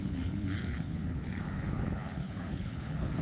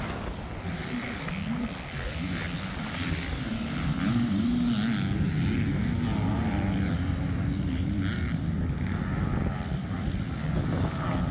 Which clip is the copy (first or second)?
first